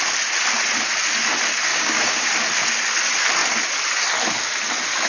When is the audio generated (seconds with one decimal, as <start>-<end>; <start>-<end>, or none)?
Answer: 1.7-2.3